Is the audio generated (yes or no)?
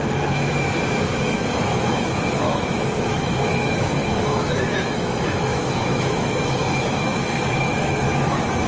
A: yes